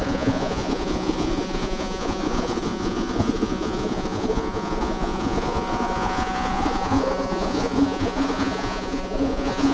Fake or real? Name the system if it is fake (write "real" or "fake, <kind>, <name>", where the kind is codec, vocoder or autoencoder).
fake, vocoder, Vocos